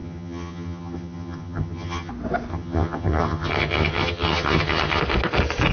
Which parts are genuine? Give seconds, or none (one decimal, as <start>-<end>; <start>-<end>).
2.1-2.5; 5.0-5.7